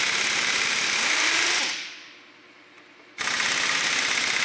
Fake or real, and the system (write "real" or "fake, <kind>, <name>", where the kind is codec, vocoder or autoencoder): real